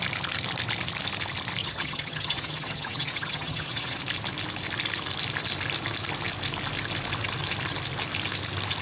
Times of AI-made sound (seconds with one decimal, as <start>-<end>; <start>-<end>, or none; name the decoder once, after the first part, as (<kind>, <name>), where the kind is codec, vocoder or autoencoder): 1.6-4.0 (vocoder, HiFi-GAN)